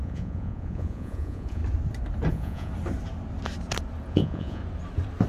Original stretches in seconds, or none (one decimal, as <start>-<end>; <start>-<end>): 1.6-2.3; 2.7-4.1; 4.6-5.3